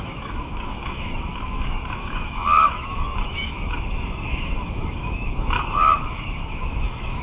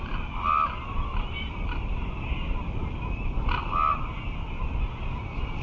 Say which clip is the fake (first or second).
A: first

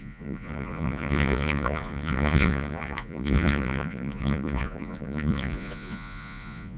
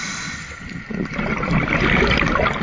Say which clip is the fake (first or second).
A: first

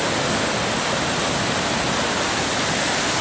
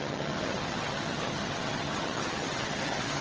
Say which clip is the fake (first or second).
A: second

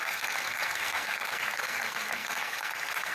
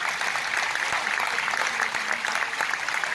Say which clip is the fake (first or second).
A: first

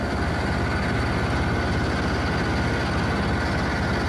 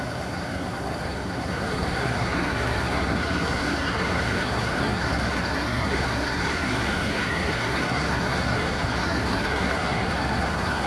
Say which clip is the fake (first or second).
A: second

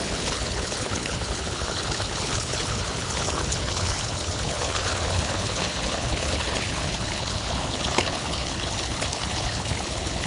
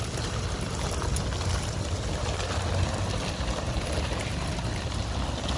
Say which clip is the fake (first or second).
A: first